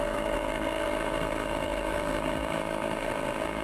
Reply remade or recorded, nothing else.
remade